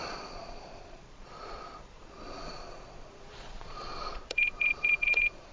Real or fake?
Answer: fake